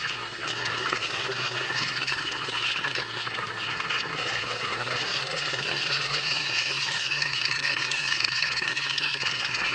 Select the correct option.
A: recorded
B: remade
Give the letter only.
B